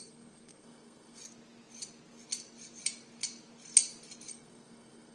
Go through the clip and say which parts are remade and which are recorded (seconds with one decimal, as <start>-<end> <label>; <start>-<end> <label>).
0.0-1.2 remade; 1.2-4.3 recorded; 4.3-5.1 remade